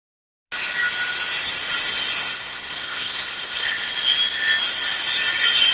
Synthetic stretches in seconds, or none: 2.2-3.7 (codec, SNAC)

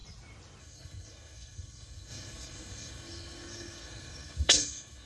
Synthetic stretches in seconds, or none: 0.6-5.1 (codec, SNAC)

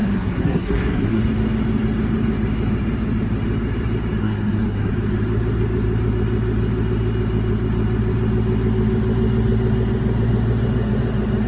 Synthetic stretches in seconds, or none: 0.0-1.2 (codec, SNAC); 4.2-4.9

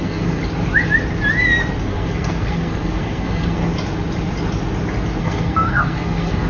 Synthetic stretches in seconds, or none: 0.0-0.4 (codec, SNAC); 1.8-3.7; 5.2-6.5

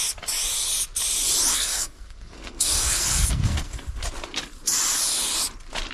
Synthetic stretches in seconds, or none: 1.5-3.9 (codec, SNAC)